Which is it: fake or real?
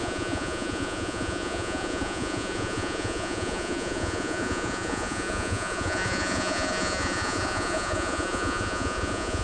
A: fake